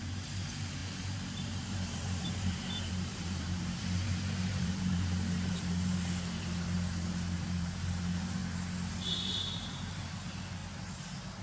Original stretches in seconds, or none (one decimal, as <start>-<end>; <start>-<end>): 8.4-8.9; 10.6-11.4